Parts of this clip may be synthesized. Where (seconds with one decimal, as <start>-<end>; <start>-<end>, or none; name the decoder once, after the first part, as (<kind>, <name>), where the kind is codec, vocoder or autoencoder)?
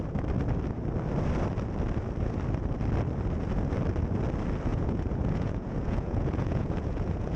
4.7-7.4 (vocoder, Vocos)